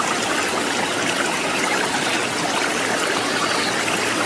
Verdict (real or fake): real